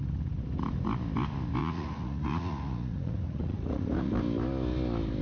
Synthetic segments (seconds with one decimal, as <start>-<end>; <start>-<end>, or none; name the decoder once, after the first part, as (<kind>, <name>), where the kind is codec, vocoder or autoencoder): 1.6-4.2 (vocoder, Vocos)